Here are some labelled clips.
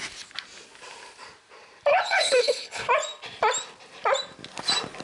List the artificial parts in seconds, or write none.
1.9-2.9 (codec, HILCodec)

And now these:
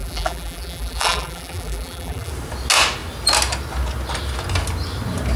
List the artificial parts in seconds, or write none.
0.0-2.3 (vocoder, BigVGAN v2)

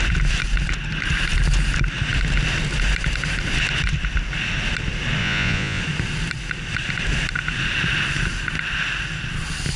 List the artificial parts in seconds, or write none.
5.2-5.8 (vocoder, Vocos)

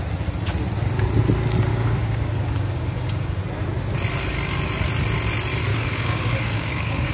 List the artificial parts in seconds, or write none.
1.7-3.4 (codec, DAC); 5.7-7.1

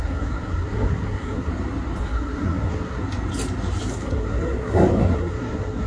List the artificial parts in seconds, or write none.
0.0-1.5 (codec, SNAC); 2.0-3.0; 3.9-5.9

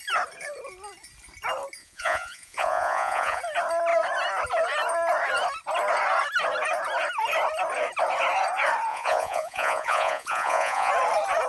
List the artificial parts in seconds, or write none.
1.8-3.4 (vocoder, Vocos); 8.9-10.9

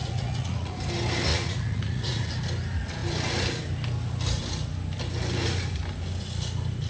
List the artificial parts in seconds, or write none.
0.0-0.7 (vocoder, Vocos); 1.3-2.3

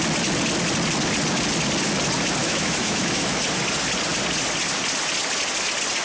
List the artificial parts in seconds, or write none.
2.4-3.4 (autoencoder, DAC-VAE)